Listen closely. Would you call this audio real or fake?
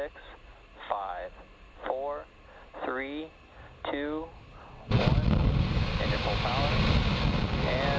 real